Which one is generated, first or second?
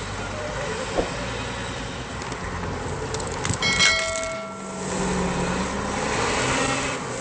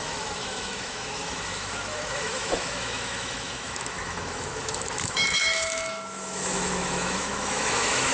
second